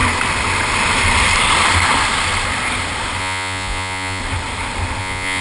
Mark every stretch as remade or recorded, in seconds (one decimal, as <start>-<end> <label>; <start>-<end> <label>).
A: 0.0-3.2 recorded; 3.2-4.2 remade; 4.2-5.0 recorded; 5.0-5.4 remade